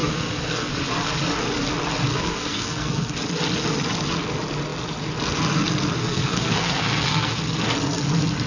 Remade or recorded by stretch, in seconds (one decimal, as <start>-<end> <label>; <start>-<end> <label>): 0.0-0.7 remade; 0.7-2.1 recorded; 2.1-3.1 remade; 3.1-6.0 recorded; 6.0-7.4 remade; 7.4-8.5 recorded